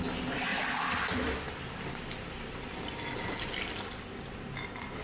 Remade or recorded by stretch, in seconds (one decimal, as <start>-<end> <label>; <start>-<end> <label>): 0.0-0.5 recorded; 0.5-3.5 remade; 3.5-5.0 recorded